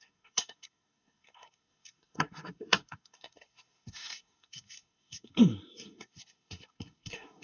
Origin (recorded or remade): remade